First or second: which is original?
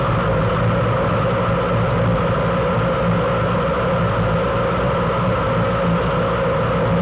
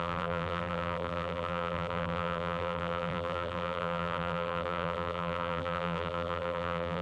first